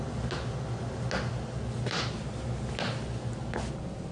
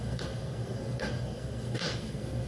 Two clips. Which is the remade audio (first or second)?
second